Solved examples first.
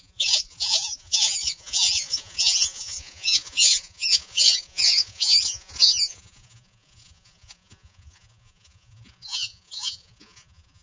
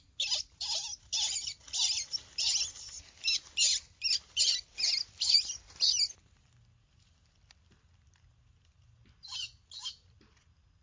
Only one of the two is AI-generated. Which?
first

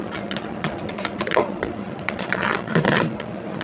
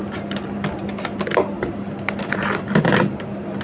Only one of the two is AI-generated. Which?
first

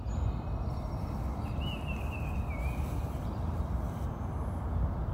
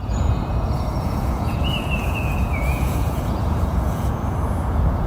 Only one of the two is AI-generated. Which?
second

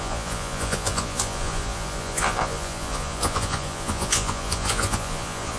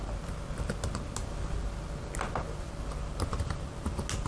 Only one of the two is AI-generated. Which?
first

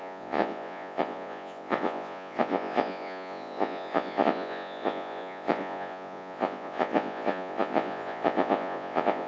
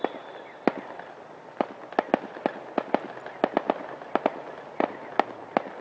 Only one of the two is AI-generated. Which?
first